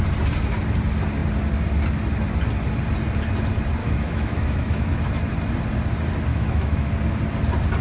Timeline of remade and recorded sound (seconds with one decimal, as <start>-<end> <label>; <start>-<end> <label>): 0.0-3.8 recorded; 3.8-5.0 remade; 5.0-6.3 recorded; 6.3-6.9 remade; 6.9-7.8 recorded